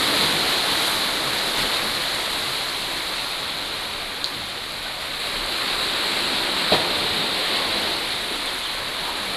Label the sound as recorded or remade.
recorded